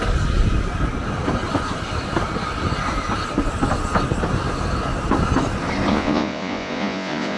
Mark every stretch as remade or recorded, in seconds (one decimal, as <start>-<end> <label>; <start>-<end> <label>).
0.0-5.9 recorded; 5.9-7.4 remade